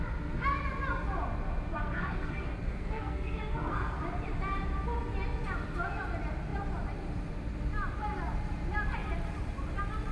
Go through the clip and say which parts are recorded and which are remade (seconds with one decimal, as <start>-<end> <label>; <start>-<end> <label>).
0.0-1.7 recorded; 1.7-4.0 remade; 4.0-10.1 recorded